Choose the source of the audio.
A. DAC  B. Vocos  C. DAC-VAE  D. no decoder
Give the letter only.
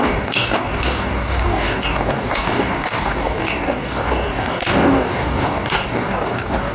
A